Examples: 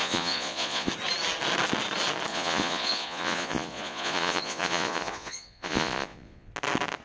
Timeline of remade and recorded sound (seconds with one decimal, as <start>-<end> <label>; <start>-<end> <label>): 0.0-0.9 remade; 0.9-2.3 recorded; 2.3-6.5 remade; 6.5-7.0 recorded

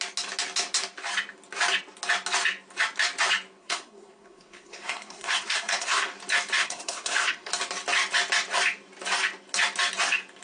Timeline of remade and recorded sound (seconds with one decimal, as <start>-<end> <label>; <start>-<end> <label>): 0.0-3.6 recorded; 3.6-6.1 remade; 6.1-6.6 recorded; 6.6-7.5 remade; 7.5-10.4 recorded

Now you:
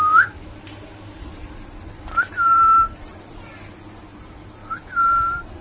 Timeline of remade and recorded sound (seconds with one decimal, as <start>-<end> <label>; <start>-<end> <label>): 0.0-3.3 remade; 3.3-4.1 recorded; 4.1-5.6 remade

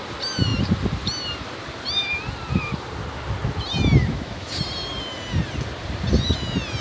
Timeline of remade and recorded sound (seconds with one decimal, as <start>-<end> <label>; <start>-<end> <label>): 0.0-4.0 recorded; 4.0-4.5 remade; 4.5-6.8 recorded